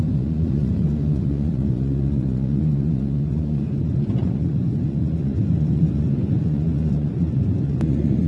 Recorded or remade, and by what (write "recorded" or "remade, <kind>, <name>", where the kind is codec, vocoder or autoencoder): remade, vocoder, Vocos